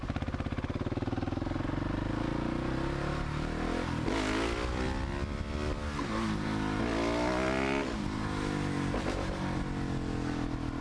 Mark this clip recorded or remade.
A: recorded